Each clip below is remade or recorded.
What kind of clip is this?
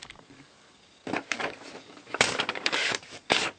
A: remade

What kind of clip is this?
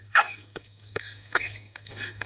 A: remade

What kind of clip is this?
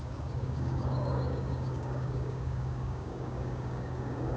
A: remade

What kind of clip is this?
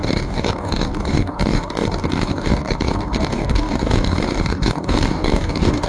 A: remade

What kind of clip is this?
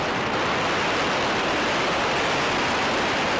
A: recorded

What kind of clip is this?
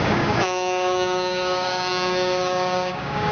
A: remade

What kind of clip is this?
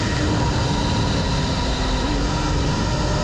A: recorded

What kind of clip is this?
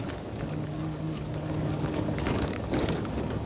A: remade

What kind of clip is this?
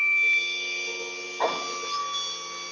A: recorded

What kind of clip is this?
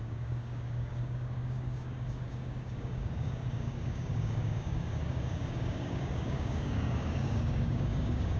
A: remade